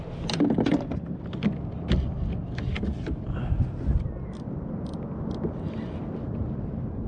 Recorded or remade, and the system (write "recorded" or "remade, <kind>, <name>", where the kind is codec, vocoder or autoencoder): recorded